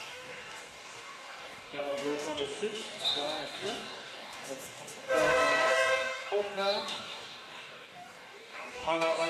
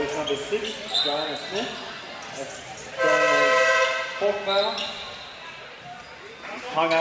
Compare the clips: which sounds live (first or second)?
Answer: second